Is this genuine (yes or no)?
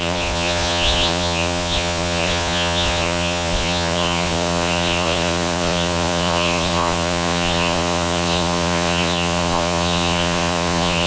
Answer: no